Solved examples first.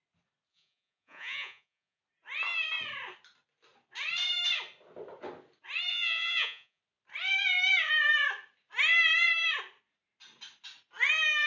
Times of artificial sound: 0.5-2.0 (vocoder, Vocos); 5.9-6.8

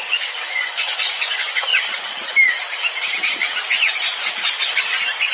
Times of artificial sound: 0.0-1.7 (vocoder, Vocos)